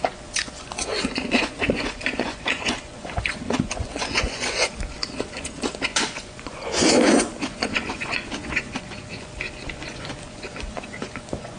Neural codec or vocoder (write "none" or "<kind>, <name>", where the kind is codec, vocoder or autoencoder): vocoder, Vocos